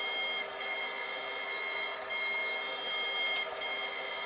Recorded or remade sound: recorded